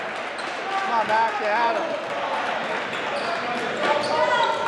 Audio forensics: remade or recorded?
recorded